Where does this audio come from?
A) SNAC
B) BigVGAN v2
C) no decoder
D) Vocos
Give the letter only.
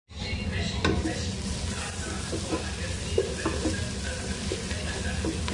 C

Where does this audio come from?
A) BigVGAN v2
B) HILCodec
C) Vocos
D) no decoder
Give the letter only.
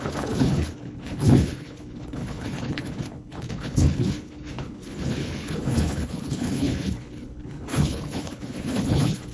B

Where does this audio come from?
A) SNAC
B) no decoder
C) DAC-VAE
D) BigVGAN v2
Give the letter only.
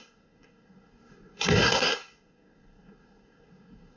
A